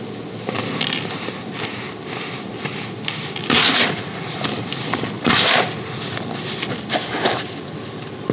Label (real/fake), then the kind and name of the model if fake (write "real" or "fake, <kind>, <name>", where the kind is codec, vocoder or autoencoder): real